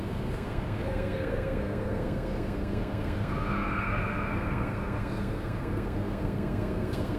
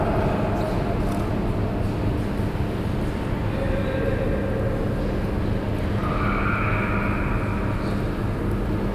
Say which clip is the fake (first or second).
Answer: first